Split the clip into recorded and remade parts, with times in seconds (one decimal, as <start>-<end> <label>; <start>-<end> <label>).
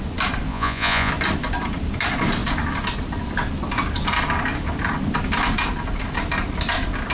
0.0-0.5 recorded; 0.5-1.1 remade; 1.1-7.1 recorded